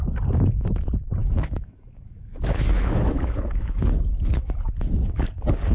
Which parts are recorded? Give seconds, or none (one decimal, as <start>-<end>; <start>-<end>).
0.0-1.2; 4.6-5.7